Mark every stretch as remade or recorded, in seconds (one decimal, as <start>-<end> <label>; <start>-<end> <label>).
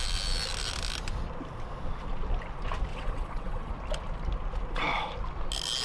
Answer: 0.0-2.9 recorded; 2.9-3.7 remade; 3.7-5.8 recorded